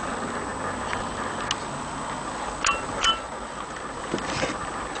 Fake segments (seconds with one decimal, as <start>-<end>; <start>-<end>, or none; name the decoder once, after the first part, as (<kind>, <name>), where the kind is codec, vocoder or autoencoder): none